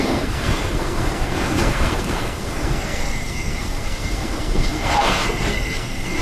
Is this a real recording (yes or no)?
no